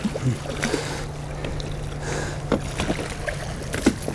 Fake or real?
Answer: real